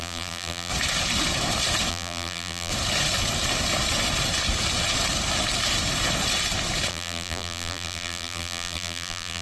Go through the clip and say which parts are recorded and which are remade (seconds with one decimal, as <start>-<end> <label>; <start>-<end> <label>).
0.0-0.7 remade; 0.7-1.9 recorded; 1.9-2.7 remade; 2.7-6.9 recorded; 6.9-9.4 remade